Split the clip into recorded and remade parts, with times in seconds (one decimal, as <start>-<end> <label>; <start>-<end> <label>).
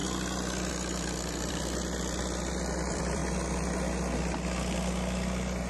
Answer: 0.0-0.7 recorded; 0.7-3.2 remade; 3.2-5.7 recorded